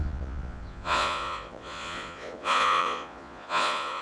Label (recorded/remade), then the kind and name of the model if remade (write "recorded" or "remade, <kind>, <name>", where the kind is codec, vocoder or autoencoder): remade, vocoder, Vocos